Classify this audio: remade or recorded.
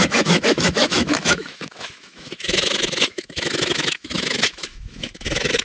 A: remade